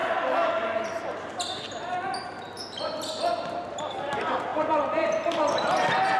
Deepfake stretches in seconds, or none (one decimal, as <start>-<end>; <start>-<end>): none